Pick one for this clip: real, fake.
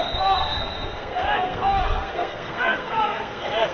fake